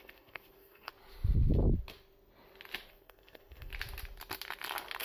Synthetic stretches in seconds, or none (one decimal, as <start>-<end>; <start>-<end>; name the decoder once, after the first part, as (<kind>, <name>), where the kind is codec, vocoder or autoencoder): 0.0-0.9 (codec, SNAC); 2.9-3.7